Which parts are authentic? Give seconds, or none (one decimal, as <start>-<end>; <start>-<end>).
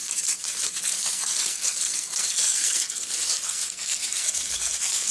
none